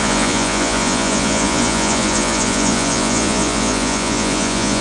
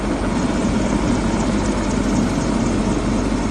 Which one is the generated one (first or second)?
first